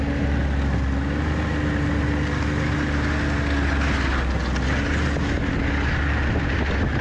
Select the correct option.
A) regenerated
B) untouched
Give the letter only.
B